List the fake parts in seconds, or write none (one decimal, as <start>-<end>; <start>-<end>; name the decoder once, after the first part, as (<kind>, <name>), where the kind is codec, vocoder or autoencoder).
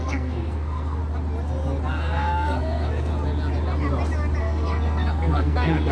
0.0-1.0 (codec, SNAC); 1.9-3.1; 4.4-5.9